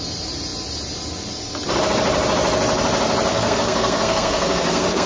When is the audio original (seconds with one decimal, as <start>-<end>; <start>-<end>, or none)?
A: 0.0-3.3